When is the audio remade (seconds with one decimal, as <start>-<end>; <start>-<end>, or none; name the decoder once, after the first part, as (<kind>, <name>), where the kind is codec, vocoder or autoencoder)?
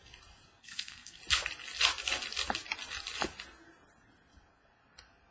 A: 0.6-1.2 (codec, SNAC)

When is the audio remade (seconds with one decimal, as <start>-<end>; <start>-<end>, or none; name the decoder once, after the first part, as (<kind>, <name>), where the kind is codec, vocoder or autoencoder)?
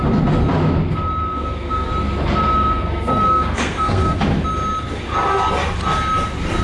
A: 1.2-1.9 (codec, SNAC); 2.5-4.2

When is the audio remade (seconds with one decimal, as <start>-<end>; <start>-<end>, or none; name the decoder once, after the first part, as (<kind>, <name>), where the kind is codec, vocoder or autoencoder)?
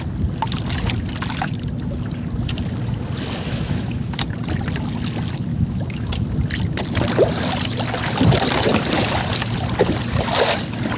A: 3.5-4.2 (autoencoder, DAC-VAE); 5.5-6.1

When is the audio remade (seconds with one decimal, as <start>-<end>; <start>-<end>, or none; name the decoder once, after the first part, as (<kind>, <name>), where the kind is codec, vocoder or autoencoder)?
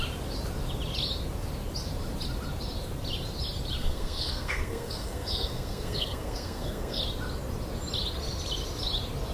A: 3.8-7.0 (codec, SNAC)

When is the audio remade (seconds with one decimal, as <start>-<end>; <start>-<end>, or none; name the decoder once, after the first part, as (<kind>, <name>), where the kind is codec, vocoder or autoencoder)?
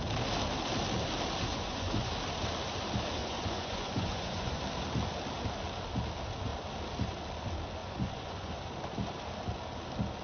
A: 1.5-2.1 (vocoder, Vocos); 3.2-4.6; 7.8-8.5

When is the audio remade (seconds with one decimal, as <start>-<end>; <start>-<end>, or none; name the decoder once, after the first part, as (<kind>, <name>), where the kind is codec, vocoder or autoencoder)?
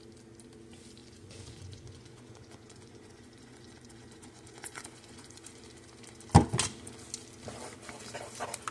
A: 1.0-5.6 (vocoder, Vocos)